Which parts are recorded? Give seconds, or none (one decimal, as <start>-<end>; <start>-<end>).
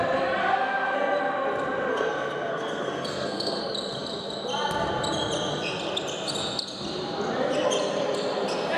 0.0-0.4; 1.2-1.9; 3.6-8.8